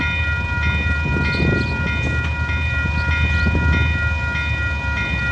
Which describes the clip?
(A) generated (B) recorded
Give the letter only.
B